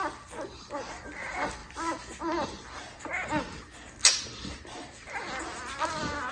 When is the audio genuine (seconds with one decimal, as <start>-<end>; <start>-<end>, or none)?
0.0-6.3